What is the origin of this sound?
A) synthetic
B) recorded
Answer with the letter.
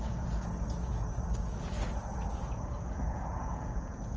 A